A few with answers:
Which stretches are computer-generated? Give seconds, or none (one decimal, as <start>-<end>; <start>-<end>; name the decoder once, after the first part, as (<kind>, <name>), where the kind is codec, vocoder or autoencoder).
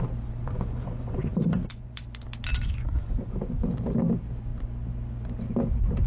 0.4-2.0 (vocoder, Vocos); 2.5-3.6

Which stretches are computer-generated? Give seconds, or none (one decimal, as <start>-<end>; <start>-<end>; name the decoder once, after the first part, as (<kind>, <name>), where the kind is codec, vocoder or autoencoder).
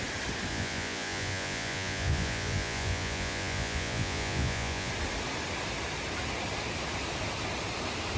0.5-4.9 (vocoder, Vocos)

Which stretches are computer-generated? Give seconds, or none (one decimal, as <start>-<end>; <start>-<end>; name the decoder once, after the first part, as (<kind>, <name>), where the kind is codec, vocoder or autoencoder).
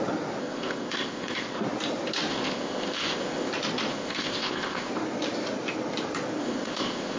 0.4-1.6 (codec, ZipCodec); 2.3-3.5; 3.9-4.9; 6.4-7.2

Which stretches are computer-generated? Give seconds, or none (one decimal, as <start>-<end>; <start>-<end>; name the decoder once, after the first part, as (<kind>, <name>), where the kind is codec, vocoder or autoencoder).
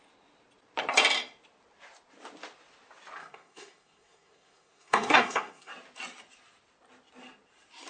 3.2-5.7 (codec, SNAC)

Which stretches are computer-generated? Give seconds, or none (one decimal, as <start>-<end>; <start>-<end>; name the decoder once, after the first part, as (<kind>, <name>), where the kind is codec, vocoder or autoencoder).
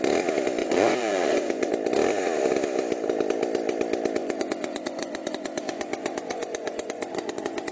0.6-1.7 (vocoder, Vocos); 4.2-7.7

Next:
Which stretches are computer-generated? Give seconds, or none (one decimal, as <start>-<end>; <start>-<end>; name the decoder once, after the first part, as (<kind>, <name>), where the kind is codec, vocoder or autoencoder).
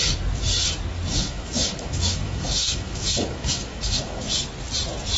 1.1-4.2 (autoencoder, DAC-VAE)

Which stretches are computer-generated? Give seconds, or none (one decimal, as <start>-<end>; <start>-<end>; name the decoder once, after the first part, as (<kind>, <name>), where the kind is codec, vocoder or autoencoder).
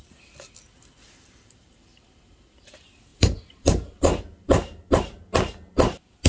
3.1-4.0 (vocoder, BigVGAN v2)